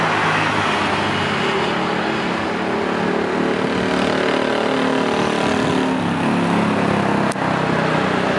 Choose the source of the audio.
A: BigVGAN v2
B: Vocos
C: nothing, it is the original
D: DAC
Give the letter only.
C